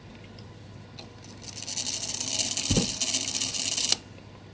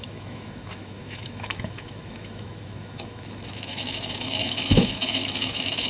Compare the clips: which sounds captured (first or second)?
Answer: first